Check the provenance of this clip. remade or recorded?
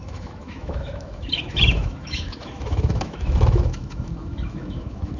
remade